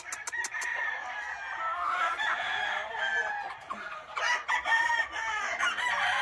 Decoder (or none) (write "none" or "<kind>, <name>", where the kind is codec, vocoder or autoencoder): none